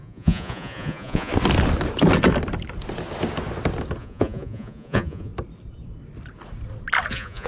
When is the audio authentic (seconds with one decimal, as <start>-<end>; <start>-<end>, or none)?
1.3-4.0; 5.3-7.1